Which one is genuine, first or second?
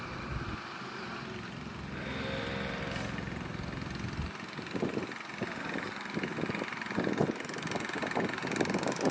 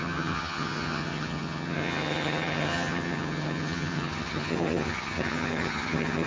first